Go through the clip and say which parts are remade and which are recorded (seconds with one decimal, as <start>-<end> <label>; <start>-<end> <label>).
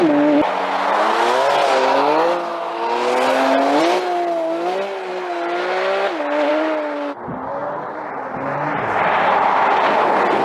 0.0-7.6 recorded; 7.6-9.7 remade; 9.7-10.4 recorded